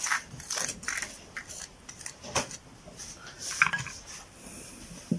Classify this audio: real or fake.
real